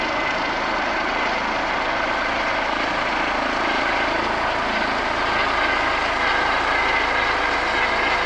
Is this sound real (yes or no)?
yes